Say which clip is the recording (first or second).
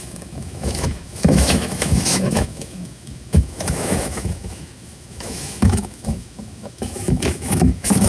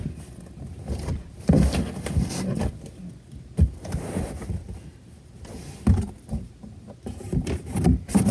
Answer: second